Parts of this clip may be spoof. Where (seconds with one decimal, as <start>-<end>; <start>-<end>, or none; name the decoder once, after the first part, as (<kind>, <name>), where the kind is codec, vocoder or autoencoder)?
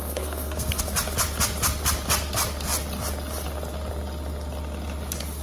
0.0-0.8 (codec, SNAC)